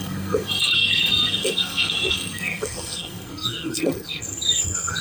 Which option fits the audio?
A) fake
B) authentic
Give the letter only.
A